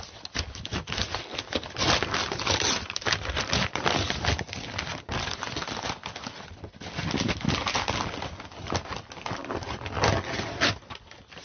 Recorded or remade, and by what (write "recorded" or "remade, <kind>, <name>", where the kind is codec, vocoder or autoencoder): recorded